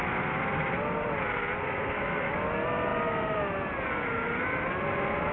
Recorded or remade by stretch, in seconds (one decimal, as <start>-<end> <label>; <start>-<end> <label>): 0.0-1.6 recorded; 1.6-2.3 remade; 2.3-5.3 recorded